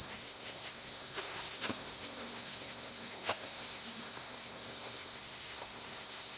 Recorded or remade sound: remade